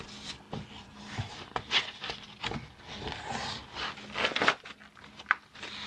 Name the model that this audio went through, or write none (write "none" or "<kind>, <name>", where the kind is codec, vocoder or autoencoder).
none